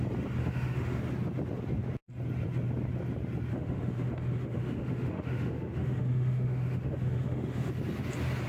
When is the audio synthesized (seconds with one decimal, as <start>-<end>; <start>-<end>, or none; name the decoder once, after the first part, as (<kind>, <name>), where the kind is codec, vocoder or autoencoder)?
0.4-1.0 (autoencoder, DAC-VAE); 3.5-7.7